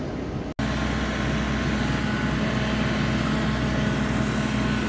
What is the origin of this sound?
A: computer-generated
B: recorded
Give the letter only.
B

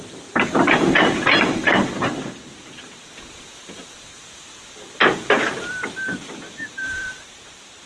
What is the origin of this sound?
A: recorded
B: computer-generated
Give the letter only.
B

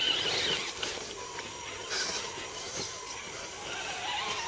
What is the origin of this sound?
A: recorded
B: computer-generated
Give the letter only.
A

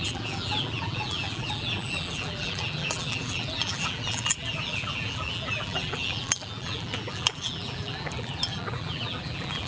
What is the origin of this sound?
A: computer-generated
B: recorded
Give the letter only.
A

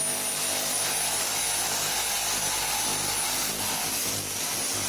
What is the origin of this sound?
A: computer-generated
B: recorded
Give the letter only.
B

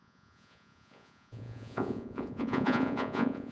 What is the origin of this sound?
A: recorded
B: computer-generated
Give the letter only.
B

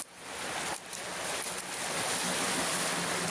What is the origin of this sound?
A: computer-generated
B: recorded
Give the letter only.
B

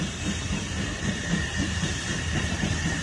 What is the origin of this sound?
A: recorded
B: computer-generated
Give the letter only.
B